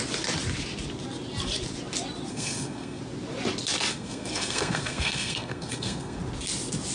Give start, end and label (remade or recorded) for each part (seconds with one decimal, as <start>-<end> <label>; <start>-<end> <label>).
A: 0.0-2.3 recorded; 2.3-3.0 remade; 3.0-3.9 recorded; 3.9-6.2 remade; 6.2-6.9 recorded